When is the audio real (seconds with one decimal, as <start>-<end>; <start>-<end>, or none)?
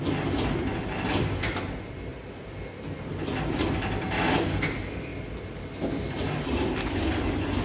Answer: 0.0-7.6